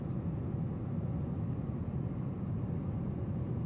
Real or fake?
real